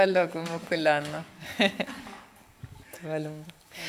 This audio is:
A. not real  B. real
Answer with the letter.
A